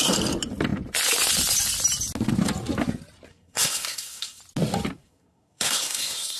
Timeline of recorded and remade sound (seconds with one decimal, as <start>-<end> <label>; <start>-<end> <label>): 0.0-3.3 recorded; 3.3-4.4 remade; 4.4-5.0 recorded; 5.0-6.4 remade